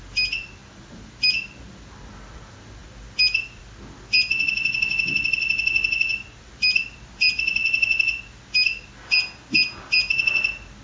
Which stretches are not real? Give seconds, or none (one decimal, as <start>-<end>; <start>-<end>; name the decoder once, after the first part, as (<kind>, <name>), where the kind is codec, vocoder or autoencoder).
none